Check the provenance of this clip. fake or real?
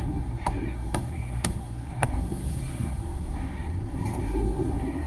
fake